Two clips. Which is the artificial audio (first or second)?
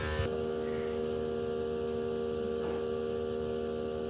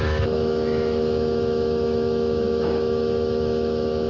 second